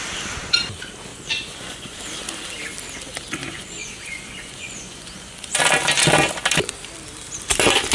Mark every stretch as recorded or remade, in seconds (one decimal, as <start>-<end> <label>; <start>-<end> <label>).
0.0-1.1 recorded; 1.1-2.0 remade; 2.0-3.4 recorded; 3.4-5.6 remade; 5.6-7.9 recorded